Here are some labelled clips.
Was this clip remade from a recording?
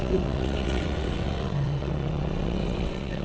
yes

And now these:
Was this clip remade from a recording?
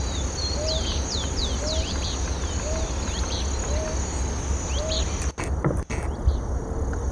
no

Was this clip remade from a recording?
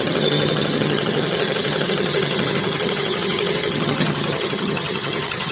yes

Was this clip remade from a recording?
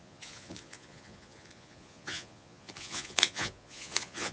yes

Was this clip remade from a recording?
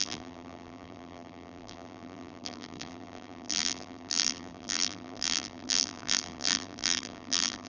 yes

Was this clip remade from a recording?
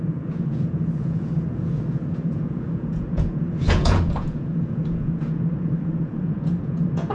yes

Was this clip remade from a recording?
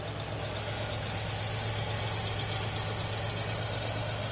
no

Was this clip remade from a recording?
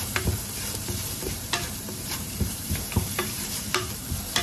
yes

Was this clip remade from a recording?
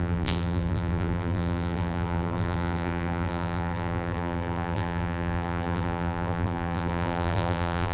yes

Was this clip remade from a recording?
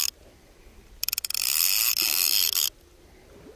no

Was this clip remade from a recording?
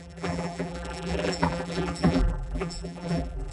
yes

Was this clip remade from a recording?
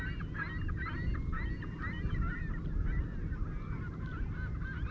no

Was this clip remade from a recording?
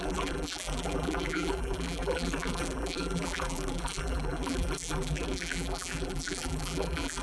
yes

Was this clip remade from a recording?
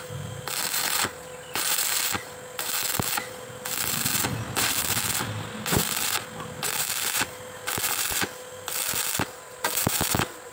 no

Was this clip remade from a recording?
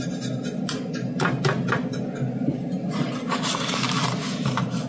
no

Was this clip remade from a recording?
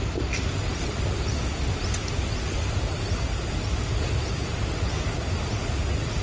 no